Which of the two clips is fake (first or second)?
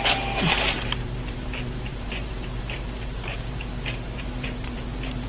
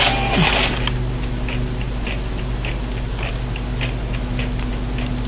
first